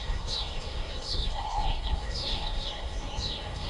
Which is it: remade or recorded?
remade